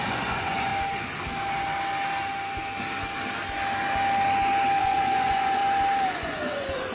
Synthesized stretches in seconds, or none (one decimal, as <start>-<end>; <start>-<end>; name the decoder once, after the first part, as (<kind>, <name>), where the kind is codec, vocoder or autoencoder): 0.0-0.7 (vocoder, Vocos); 4.8-5.6; 6.1-6.9